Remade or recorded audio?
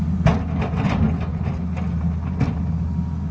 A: recorded